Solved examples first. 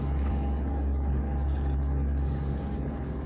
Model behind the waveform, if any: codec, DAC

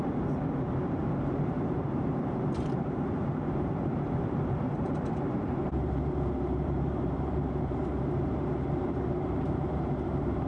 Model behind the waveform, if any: vocoder, BigVGAN v2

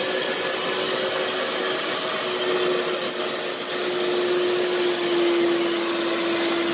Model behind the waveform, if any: none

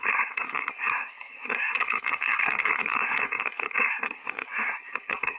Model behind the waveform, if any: codec, SNAC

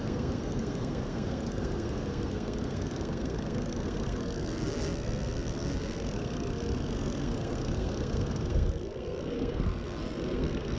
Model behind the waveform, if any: codec, SNAC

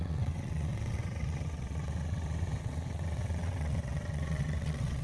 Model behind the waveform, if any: vocoder, WaveNeXt